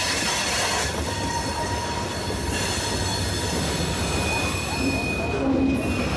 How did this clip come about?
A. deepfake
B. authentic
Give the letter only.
B